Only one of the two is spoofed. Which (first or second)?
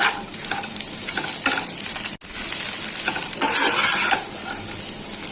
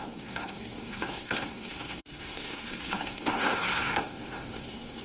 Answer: second